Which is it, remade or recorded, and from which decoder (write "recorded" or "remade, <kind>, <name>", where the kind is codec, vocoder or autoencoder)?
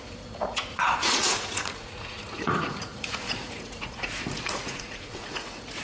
remade, vocoder, Vocos